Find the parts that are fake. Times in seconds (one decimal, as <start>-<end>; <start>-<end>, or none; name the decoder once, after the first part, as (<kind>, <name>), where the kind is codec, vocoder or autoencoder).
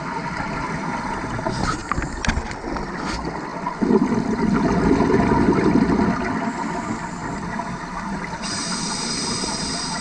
none